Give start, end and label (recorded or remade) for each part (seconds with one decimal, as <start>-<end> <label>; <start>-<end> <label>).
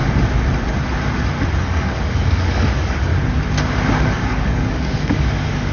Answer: 0.0-1.6 recorded; 1.6-3.1 remade; 3.1-4.0 recorded; 4.0-5.7 remade